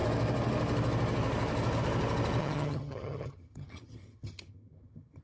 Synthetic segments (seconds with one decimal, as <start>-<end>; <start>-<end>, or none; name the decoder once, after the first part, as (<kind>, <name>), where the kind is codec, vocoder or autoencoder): 2.4-5.2 (vocoder, HiFi-GAN)